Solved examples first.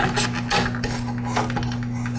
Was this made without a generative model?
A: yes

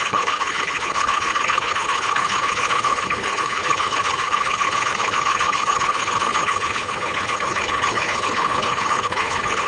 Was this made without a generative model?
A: no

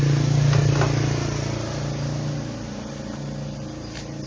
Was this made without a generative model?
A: yes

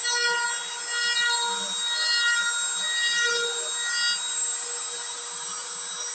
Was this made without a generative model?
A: yes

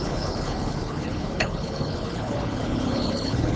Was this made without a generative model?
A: no